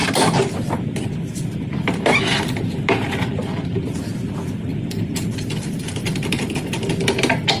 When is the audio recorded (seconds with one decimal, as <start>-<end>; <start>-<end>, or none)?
0.0-4.7; 6.9-7.6